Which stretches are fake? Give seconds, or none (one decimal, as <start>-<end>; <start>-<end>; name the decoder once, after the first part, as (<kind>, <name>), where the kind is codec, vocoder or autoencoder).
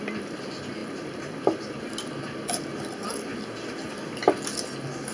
none